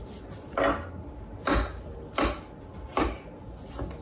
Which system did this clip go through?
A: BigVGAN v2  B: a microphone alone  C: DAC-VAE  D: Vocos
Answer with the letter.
B